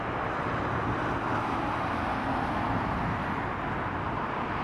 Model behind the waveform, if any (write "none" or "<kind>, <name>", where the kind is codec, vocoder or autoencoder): none